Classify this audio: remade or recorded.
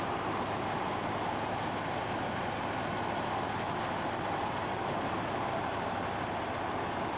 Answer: recorded